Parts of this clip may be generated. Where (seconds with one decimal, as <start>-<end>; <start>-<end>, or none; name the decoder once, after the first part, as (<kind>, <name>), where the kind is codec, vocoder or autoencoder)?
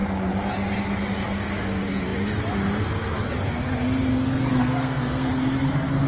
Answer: 4.5-5.3 (codec, SNAC)